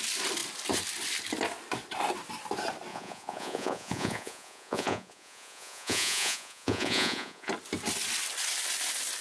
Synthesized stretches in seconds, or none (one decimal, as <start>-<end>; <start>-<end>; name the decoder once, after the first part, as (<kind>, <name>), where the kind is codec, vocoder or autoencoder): 2.9-7.5 (vocoder, Vocos)